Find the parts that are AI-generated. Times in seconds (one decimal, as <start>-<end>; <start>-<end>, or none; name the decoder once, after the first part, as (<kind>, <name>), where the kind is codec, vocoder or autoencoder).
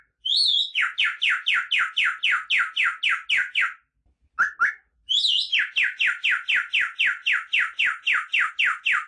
none